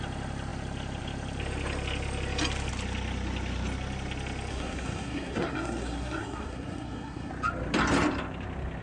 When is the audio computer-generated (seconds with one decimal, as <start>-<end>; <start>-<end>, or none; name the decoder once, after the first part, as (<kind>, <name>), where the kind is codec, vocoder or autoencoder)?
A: 4.5-7.3 (codec, SNAC)